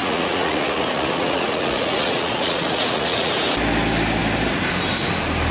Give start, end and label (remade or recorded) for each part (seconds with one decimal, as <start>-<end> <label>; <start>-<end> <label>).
0.0-3.3 remade; 3.3-5.5 recorded